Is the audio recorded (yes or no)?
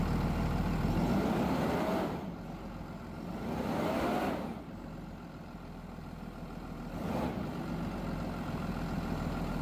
yes